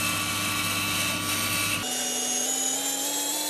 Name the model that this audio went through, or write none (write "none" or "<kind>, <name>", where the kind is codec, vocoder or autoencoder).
none